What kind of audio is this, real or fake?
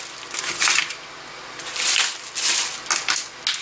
real